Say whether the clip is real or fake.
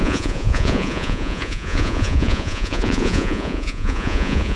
fake